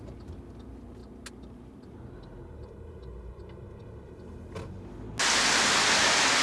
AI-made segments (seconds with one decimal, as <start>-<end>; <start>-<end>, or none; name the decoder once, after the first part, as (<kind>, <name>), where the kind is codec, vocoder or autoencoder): none

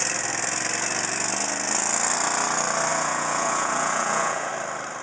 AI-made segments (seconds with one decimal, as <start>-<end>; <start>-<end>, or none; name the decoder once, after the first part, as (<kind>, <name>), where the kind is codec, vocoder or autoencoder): 2.9-4.5 (vocoder, Vocos)

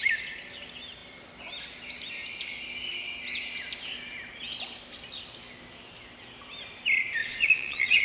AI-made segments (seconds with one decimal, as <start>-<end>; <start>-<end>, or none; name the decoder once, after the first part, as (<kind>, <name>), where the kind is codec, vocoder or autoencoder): 7.2-8.0 (vocoder, Vocos)

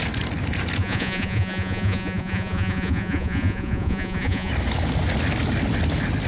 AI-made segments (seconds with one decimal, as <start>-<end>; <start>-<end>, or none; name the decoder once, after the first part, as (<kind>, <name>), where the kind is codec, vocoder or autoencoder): 0.8-4.5 (vocoder, Vocos)